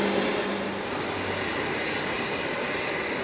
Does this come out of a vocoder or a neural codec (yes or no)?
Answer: no